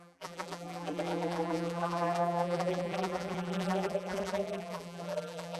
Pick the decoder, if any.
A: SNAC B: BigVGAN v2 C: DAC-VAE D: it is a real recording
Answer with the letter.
B